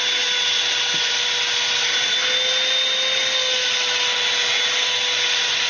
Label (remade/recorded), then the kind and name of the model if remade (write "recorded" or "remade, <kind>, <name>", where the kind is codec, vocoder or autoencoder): recorded